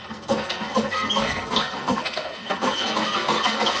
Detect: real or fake fake